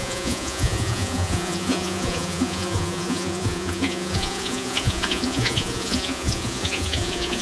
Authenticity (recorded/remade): remade